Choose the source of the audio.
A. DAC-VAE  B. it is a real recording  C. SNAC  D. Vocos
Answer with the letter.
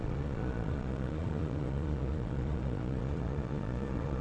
D